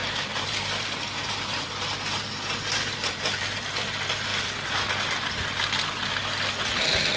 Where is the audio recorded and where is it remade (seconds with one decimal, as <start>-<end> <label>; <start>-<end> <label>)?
0.0-3.2 remade; 3.2-7.2 recorded